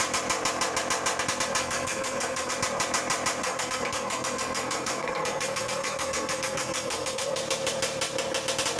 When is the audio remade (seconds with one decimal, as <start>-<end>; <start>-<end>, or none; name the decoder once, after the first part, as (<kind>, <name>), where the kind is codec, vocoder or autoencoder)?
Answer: 1.6-2.5 (codec, SNAC); 3.4-7.4